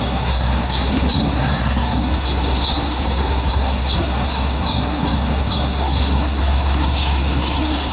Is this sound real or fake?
fake